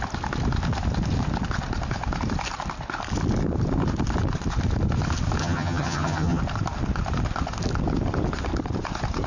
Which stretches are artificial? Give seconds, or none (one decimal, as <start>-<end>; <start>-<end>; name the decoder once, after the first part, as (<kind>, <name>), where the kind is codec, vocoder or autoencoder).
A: 5.4-6.4 (vocoder, HiFi-GAN)